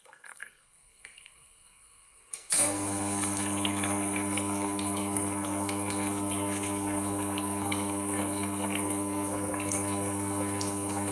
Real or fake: fake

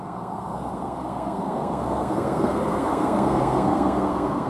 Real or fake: fake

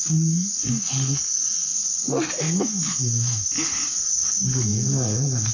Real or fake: fake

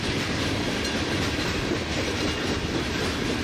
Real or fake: real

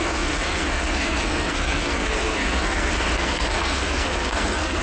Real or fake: fake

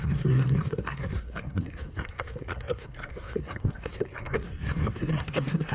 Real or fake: fake